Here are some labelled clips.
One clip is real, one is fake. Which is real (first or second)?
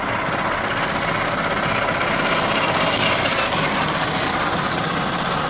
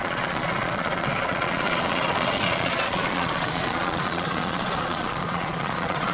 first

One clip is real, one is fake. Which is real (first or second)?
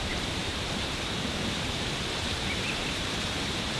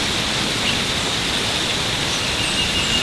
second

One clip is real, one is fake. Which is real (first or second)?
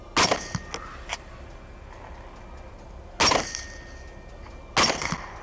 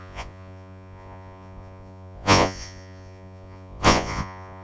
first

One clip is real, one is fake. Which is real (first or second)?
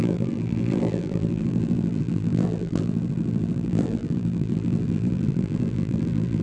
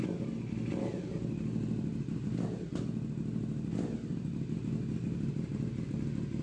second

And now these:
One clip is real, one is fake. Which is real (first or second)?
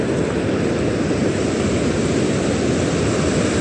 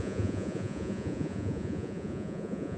first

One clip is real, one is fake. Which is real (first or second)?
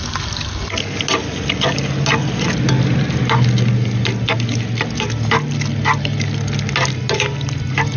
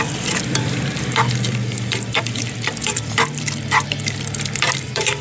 first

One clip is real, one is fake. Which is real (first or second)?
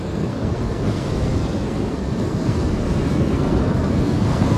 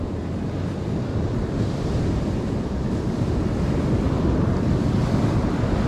second